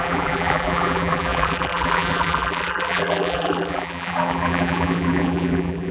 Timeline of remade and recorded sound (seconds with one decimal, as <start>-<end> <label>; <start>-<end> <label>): 0.0-5.9 remade